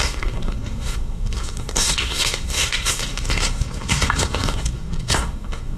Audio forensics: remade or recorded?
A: remade